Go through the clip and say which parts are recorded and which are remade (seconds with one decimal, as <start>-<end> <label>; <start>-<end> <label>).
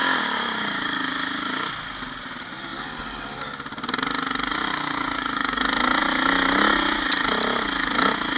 0.0-1.7 remade; 1.7-4.5 recorded; 4.5-5.6 remade; 5.6-8.4 recorded